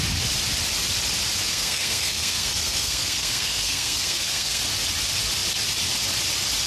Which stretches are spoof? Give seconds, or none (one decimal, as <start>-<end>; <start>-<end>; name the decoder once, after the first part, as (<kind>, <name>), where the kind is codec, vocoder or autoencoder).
1.5-4.6 (codec, SNAC)